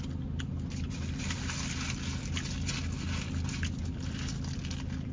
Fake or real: real